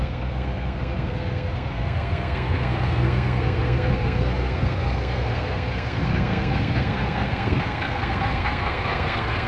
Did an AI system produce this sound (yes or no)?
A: yes